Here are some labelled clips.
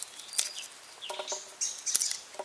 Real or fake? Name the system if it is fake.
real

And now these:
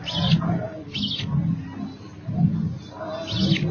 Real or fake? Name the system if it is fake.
real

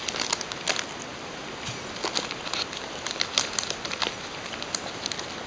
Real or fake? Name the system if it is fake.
real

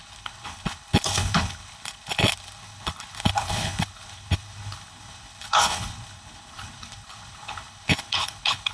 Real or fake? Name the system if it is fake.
fake, codec, HILCodec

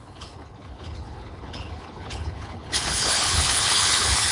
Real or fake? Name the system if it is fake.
fake, codec, HILCodec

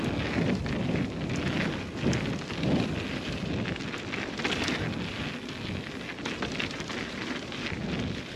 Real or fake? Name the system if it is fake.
real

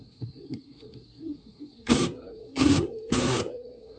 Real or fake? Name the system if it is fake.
fake, codec, SNAC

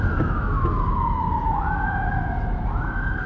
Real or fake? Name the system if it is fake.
fake, autoencoder, DAC-VAE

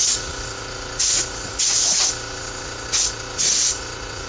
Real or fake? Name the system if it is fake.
fake, vocoder, Vocos